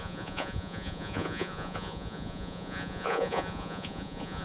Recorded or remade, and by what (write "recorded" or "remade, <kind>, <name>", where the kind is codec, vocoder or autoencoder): remade, vocoder, Vocos